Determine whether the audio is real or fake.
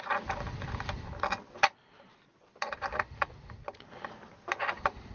real